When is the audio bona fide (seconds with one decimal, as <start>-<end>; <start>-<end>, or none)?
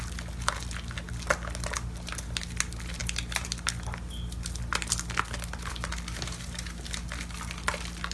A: 0.0-8.1